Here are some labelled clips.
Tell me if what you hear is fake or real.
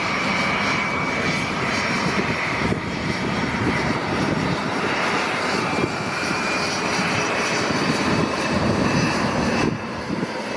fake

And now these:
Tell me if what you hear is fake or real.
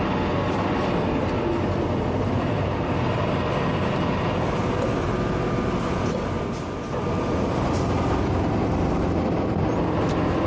real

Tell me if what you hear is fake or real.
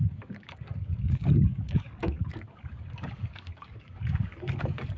fake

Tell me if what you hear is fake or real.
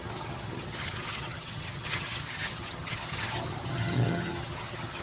fake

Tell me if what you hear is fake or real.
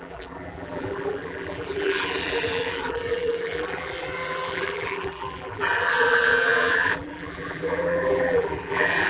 fake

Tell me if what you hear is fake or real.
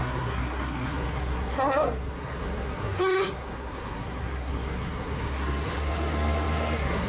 fake